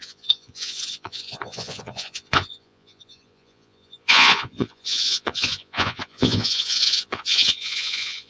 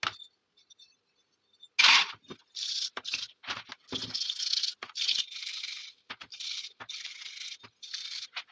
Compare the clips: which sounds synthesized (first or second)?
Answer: first